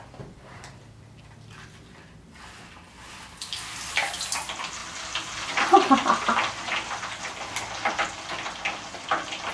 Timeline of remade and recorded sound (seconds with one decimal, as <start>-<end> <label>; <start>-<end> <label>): 0.0-9.5 recorded